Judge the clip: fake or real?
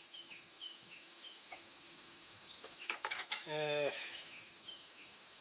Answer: fake